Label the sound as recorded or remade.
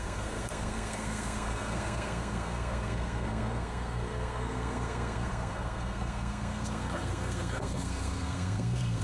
remade